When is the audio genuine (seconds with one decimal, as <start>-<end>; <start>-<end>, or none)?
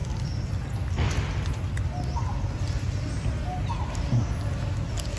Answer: 0.0-5.2